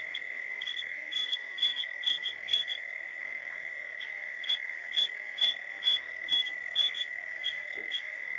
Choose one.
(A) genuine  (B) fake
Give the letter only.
B